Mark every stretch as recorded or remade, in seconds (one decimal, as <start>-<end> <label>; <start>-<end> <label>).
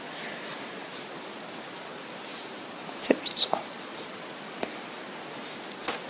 0.0-2.3 recorded; 2.3-4.3 remade; 4.3-6.1 recorded